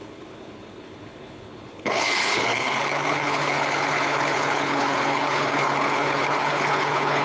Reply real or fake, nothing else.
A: fake